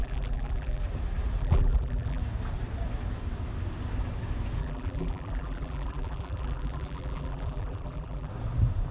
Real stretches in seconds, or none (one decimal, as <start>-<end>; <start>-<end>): 0.8-1.4; 2.2-4.6; 8.3-8.9